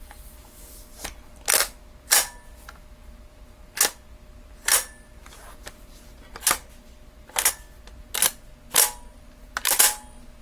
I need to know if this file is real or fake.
real